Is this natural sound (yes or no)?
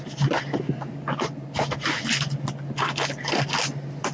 yes